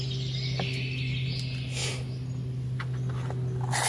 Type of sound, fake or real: real